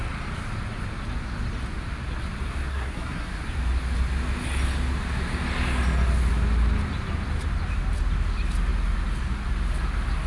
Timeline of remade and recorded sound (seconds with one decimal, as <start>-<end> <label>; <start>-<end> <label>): 0.0-2.7 recorded; 2.7-3.3 remade; 3.3-10.3 recorded